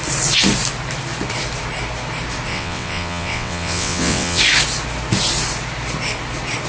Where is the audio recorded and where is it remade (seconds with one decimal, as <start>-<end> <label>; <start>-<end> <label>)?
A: 0.0-2.5 recorded; 2.5-4.4 remade; 4.4-6.7 recorded